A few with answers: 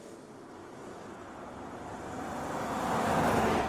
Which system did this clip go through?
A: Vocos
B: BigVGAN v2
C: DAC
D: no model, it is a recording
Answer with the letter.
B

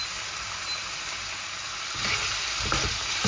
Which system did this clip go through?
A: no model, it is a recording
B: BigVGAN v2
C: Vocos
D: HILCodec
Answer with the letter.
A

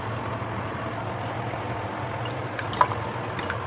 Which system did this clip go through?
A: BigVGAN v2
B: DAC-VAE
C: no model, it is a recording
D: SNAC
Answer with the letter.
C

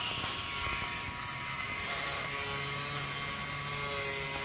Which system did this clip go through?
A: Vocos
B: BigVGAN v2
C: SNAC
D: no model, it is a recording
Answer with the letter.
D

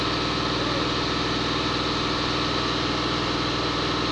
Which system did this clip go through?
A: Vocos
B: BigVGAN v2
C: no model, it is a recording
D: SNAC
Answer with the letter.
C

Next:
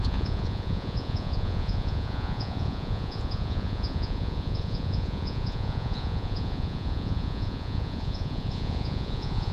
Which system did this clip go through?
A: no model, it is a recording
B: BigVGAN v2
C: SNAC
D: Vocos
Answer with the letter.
D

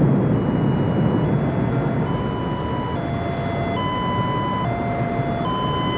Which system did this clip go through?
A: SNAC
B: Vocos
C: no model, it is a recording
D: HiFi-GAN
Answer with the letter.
C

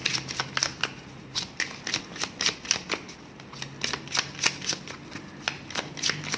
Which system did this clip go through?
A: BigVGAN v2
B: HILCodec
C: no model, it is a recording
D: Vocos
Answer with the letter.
C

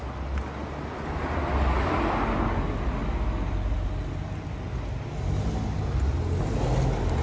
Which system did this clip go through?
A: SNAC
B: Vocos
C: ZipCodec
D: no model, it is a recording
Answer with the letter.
D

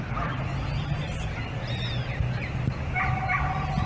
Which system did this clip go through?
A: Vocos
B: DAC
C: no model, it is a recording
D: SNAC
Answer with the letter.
C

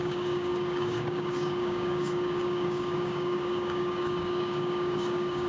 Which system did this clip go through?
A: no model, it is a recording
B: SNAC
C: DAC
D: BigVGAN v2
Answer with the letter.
C